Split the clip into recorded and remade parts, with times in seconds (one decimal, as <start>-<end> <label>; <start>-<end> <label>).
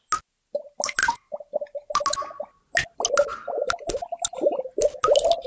0.0-5.5 recorded